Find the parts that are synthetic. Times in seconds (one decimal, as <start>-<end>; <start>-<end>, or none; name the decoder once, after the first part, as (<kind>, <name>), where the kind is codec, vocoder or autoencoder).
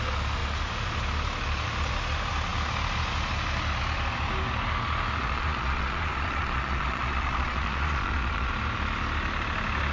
5.2-8.5 (vocoder, Vocos)